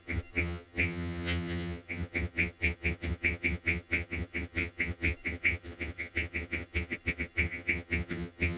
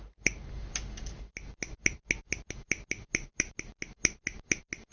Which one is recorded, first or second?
second